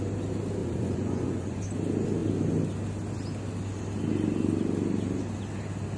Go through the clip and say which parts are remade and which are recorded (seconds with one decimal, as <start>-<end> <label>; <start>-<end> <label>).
0.0-0.6 recorded; 0.6-1.6 remade; 1.6-6.0 recorded